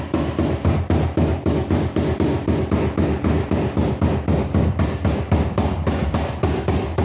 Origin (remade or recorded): recorded